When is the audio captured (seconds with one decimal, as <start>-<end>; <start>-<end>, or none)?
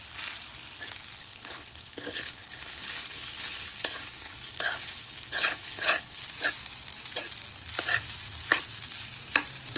0.0-1.2; 6.2-9.8